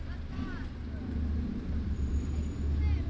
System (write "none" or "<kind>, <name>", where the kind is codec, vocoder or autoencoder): none